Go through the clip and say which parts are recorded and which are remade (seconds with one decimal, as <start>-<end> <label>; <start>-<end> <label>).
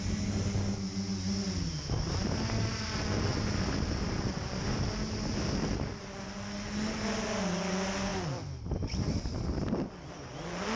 0.0-10.8 recorded